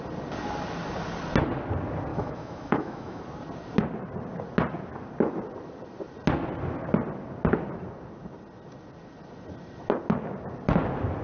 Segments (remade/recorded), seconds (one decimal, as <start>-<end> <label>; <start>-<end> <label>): 0.0-2.1 recorded; 2.1-3.2 remade; 3.2-11.2 recorded